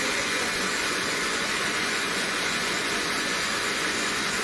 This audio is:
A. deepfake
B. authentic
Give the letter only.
A